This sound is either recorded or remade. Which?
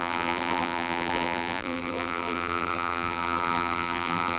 remade